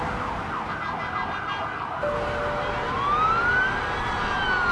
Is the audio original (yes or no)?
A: yes